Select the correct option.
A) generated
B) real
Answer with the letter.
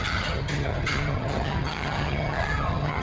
A